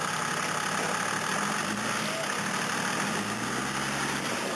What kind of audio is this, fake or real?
real